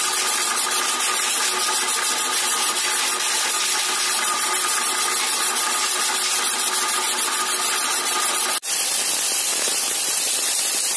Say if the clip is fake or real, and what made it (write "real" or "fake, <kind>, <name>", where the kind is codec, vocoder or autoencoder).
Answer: real